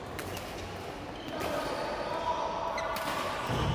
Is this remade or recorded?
recorded